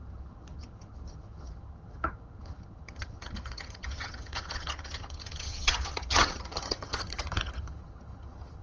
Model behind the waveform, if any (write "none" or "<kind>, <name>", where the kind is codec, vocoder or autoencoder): vocoder, HiFi-GAN